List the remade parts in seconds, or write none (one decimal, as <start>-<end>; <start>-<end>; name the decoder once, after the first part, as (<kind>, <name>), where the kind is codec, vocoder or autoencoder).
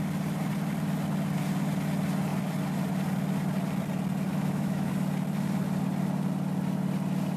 4.3-4.9 (autoencoder, DAC-VAE)